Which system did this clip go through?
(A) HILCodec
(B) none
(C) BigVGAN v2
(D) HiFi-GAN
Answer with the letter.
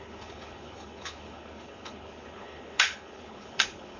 A